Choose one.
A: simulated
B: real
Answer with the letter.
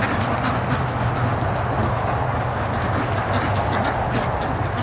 B